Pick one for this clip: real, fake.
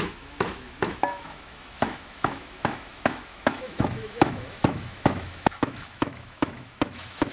fake